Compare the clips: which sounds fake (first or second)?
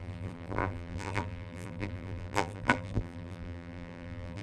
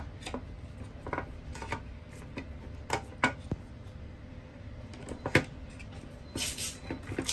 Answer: first